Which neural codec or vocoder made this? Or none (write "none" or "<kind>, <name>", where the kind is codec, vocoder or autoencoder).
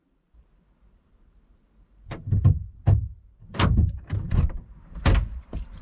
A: vocoder, BigVGAN v2